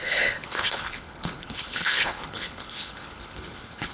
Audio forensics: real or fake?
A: fake